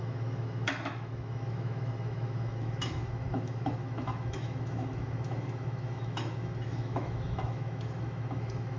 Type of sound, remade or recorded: remade